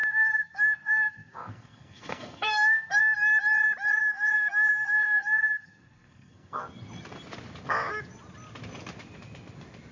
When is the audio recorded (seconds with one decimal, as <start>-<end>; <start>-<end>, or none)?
3.0-4.0; 6.6-9.9